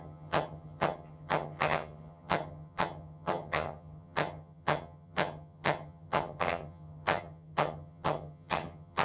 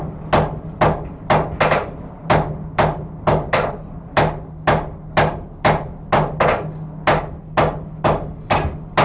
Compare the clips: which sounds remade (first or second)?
first